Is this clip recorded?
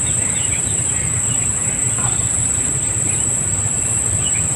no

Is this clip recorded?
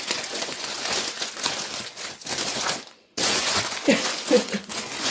no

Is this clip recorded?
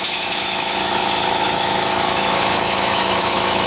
no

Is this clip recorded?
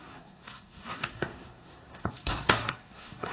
no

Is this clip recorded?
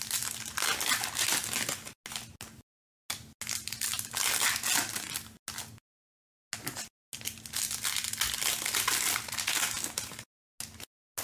yes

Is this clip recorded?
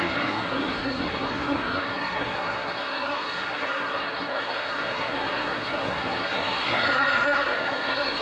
no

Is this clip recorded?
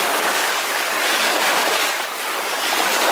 no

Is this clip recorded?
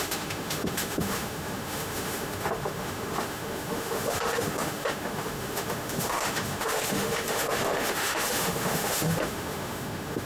no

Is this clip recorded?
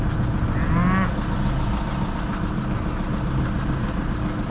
yes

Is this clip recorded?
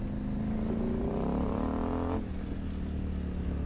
yes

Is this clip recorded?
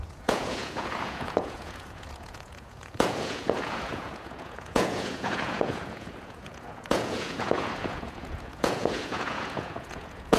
no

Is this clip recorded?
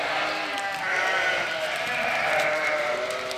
yes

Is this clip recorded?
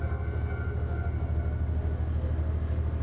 yes